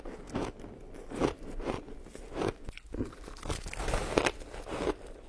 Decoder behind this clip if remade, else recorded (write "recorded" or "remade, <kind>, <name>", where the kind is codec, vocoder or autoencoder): recorded